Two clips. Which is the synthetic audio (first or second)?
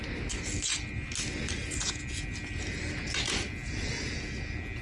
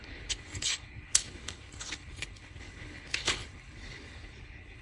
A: second